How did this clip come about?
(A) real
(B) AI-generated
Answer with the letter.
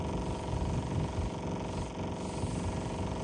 A